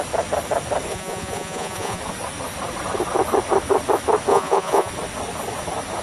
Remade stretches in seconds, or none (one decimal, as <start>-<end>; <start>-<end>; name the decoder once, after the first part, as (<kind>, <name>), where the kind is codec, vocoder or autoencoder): 0.9-2.0 (vocoder, Vocos); 4.3-4.9